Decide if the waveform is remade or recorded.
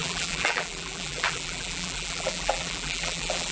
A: remade